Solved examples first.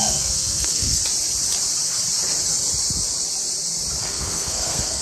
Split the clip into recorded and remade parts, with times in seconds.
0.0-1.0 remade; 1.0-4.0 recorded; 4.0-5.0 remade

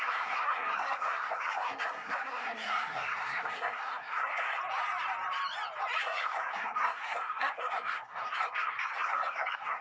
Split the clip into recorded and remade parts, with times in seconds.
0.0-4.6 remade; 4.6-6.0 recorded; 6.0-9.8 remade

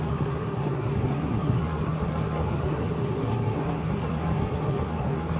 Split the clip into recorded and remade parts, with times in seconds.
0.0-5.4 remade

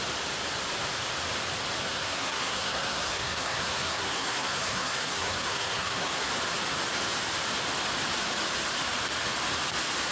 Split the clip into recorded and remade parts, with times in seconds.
0.0-1.8 recorded; 1.8-6.3 remade; 6.3-10.1 recorded

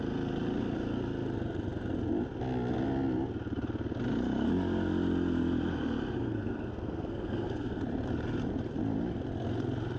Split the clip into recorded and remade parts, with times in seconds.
0.0-6.2 recorded; 6.2-7.8 remade; 7.8-10.0 recorded

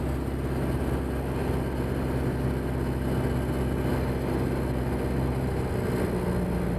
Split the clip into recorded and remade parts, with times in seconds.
0.0-6.8 recorded

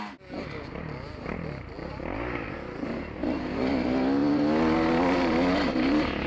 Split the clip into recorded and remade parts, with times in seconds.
0.0-6.3 recorded